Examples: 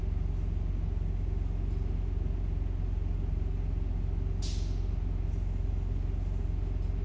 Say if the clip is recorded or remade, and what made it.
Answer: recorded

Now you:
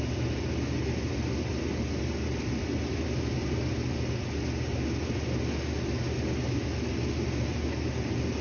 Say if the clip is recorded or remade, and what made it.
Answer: recorded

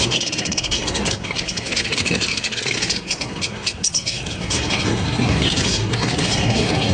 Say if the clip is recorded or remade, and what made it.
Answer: remade, codec, SNAC